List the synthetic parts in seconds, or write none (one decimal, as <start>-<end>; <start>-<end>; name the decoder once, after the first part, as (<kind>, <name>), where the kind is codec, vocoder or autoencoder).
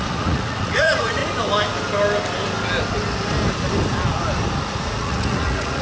0.0-1.2 (vocoder, Vocos); 4.7-5.8